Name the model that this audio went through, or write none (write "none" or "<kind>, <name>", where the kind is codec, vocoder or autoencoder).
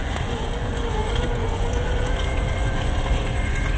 vocoder, Vocos